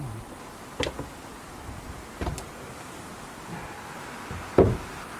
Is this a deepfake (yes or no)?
no